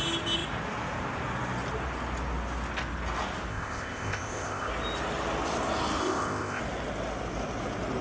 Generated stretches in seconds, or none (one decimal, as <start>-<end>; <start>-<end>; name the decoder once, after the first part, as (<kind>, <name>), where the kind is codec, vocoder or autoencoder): 3.5-4.7 (codec, ZipCodec); 6.0-6.6